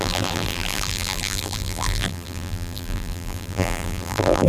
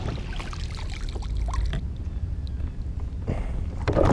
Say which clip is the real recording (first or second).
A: second